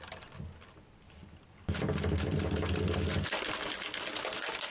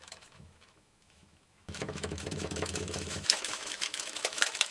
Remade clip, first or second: second